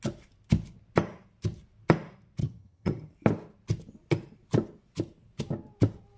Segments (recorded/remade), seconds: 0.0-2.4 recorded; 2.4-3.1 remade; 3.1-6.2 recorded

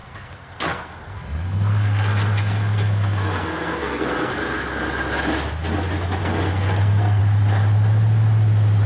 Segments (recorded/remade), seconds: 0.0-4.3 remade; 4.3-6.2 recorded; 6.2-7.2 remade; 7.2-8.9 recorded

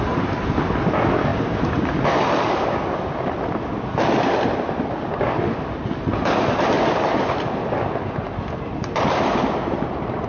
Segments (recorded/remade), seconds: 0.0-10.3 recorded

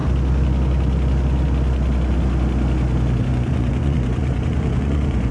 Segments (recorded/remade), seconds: 0.0-3.2 recorded; 3.2-5.3 remade